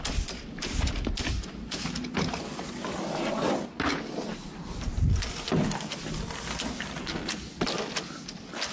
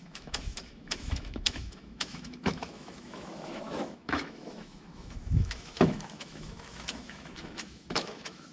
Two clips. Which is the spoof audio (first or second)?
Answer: second